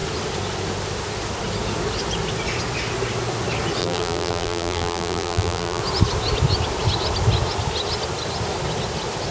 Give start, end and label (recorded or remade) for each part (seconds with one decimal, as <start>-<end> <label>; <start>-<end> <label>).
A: 0.0-3.8 recorded; 3.8-5.8 remade; 5.8-9.3 recorded